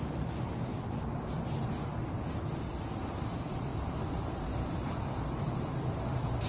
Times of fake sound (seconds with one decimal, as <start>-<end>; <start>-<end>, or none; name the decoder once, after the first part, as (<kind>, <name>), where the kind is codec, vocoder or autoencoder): 0.0-0.7 (vocoder, BigVGAN v2); 3.2-3.7; 4.4-6.5